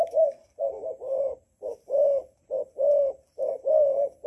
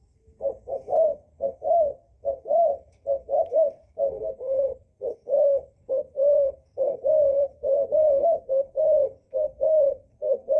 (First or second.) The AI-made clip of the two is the second